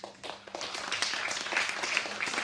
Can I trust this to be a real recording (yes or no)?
no